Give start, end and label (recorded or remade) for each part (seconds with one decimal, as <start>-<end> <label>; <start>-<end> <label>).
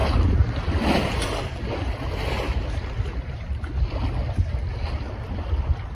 0.0-5.9 recorded